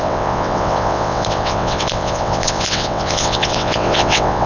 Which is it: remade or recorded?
remade